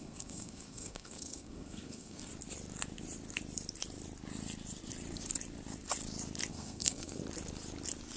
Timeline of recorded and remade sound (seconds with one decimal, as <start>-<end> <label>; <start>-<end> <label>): 0.0-2.3 remade; 2.3-6.5 recorded; 6.5-7.2 remade; 7.2-8.2 recorded